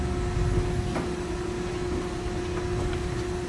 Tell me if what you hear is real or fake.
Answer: real